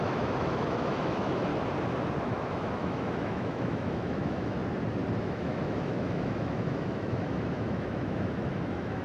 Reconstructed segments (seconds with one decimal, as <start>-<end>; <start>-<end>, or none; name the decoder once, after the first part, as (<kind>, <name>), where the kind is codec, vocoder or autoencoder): 0.0-1.5 (autoencoder, DAC-VAE); 2.2-4.6; 5.2-9.0